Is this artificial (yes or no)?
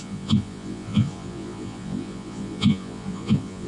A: yes